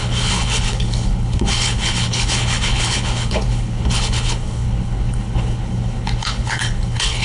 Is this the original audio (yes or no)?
no